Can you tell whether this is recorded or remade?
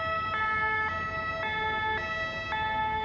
recorded